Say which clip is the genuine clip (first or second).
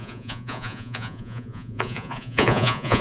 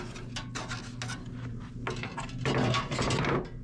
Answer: second